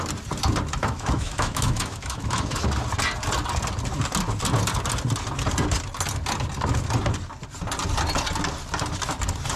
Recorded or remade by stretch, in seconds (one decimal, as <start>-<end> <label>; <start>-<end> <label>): 0.0-0.8 recorded; 0.8-2.6 remade; 2.6-9.6 recorded